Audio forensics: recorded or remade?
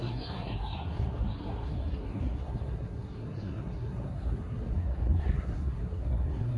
remade